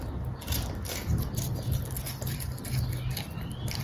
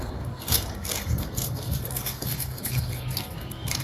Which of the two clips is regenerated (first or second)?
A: second